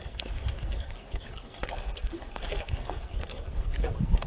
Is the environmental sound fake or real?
fake